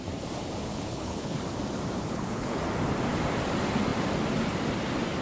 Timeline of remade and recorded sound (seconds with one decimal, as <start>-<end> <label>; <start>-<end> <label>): 0.0-0.7 recorded; 0.7-1.4 remade; 1.4-2.0 recorded; 2.0-2.6 remade; 2.6-5.2 recorded